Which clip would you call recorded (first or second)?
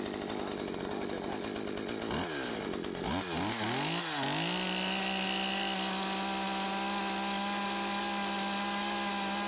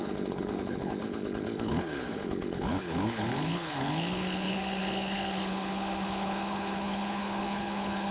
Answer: first